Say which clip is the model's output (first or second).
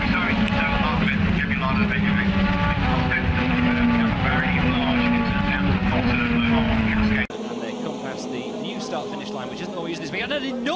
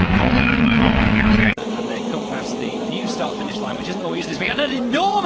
second